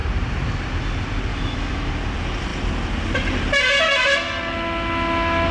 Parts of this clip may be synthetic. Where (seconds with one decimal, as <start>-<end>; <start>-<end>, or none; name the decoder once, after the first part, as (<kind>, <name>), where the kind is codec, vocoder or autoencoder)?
1.3-1.9 (autoencoder, DAC-VAE)